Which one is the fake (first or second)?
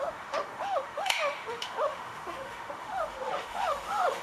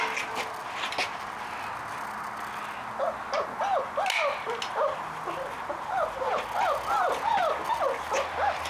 first